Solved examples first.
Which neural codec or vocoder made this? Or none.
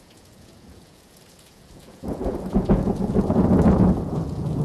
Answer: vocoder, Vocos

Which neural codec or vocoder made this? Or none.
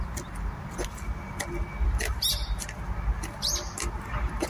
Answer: none